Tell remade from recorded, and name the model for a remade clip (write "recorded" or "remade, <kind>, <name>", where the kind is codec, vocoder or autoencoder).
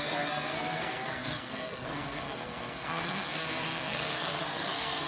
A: remade, codec, SNAC